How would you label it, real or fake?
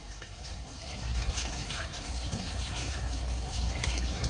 fake